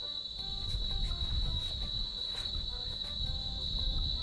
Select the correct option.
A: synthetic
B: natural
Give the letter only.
B